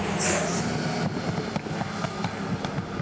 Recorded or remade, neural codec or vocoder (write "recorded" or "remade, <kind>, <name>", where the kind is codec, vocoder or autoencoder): recorded